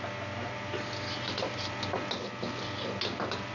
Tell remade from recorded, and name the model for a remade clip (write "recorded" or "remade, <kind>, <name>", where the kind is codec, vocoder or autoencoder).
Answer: recorded